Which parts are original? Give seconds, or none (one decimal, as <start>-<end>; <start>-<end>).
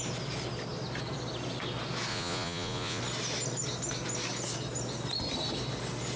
0.0-2.1; 3.0-6.2